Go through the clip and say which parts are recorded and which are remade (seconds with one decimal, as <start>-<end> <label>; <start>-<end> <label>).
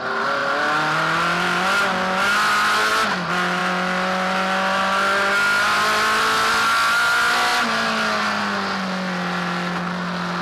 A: 0.0-10.4 recorded